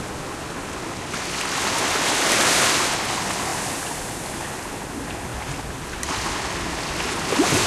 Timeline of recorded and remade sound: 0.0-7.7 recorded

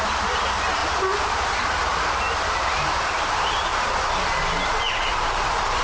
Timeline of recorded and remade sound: 0.0-0.8 remade; 0.8-1.3 recorded; 1.3-1.9 remade; 1.9-2.7 recorded; 2.7-3.7 remade; 3.7-4.9 recorded; 4.9-5.8 remade

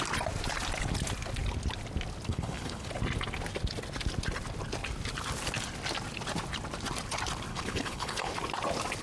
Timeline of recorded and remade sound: 0.0-2.3 recorded; 2.3-2.9 remade; 2.9-7.5 recorded; 7.5-8.3 remade; 8.3-9.0 recorded

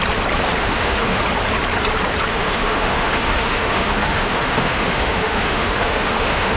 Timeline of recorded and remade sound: 0.0-0.6 recorded; 0.6-1.2 remade; 1.2-2.3 recorded; 2.3-6.6 remade